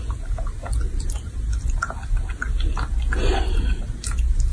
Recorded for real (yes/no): yes